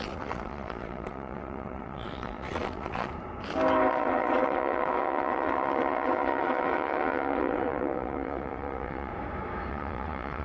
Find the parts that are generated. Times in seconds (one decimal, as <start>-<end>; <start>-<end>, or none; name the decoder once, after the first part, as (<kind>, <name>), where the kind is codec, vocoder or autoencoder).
0.0-3.1 (vocoder, WaveNeXt); 3.9-9.1; 9.7-10.4